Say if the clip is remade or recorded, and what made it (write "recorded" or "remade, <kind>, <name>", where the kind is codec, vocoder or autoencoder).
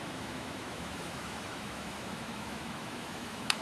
remade, autoencoder, DAC-VAE